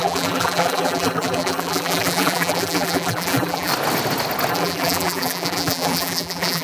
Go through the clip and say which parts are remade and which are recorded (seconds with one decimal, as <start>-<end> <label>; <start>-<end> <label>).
0.0-3.7 remade; 3.7-4.5 recorded; 4.5-6.6 remade